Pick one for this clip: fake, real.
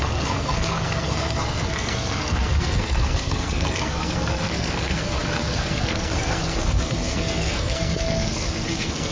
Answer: fake